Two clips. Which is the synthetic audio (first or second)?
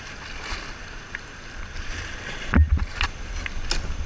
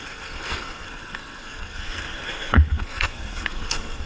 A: second